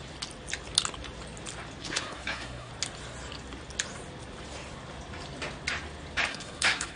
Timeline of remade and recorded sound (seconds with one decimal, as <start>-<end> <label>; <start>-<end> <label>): 0.0-1.8 recorded; 1.8-2.7 remade; 2.7-6.3 recorded; 6.3-7.0 remade